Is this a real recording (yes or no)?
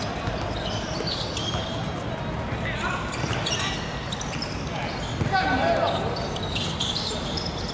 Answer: yes